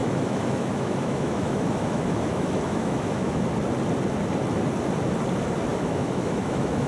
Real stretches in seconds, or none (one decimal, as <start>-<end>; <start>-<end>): 3.4-5.7